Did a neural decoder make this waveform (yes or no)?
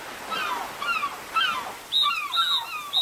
no